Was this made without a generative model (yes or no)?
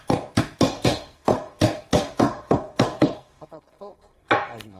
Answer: no